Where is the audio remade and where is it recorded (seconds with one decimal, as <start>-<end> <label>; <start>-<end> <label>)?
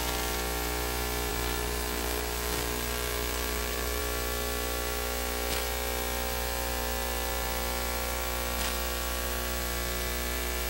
0.0-1.3 recorded; 1.3-4.0 remade; 4.0-10.7 recorded